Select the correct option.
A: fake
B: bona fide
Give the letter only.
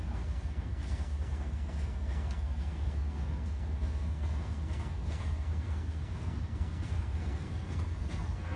A